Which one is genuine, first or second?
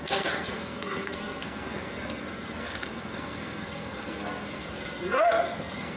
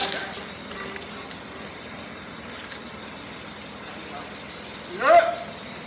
second